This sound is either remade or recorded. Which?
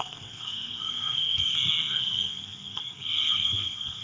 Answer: remade